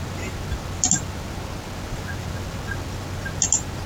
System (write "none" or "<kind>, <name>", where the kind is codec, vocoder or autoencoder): none